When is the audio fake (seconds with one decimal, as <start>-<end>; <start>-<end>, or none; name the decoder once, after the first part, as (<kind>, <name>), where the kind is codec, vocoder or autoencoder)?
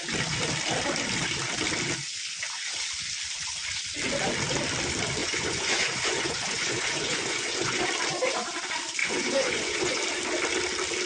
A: 5.2-7.8 (vocoder, Vocos); 9.0-10.0